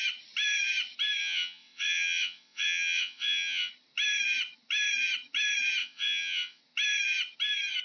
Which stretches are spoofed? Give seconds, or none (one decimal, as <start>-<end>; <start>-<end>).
1.2-3.7; 5.8-6.6